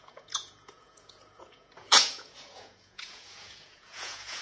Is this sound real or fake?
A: fake